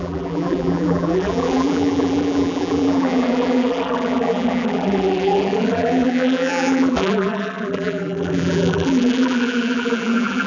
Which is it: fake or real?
fake